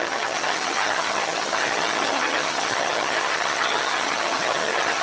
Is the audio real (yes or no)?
no